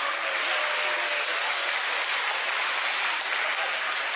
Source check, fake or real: real